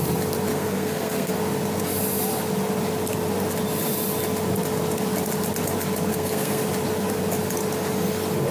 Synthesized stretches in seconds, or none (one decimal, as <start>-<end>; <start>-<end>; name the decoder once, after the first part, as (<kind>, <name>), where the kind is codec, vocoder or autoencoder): 0.5-1.3 (codec, SNAC); 6.1-6.6